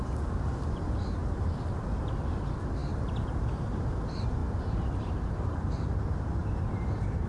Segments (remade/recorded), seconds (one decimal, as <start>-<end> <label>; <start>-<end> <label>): 0.0-4.4 recorded; 4.4-5.7 remade; 5.7-6.4 recorded; 6.4-7.3 remade